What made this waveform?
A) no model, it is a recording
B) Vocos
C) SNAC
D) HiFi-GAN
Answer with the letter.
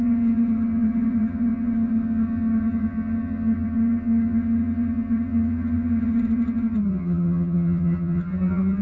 D